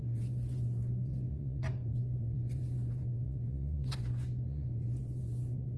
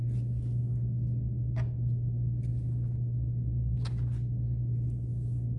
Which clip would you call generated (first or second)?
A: first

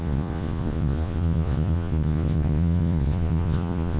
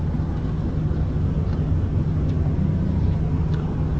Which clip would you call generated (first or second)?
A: first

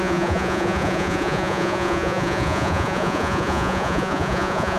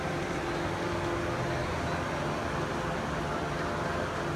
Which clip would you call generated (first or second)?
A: first